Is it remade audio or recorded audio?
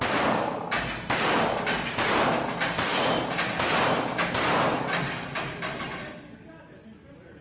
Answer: recorded